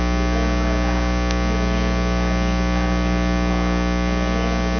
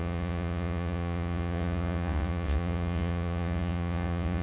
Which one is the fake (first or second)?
second